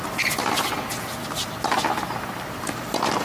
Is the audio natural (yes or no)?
yes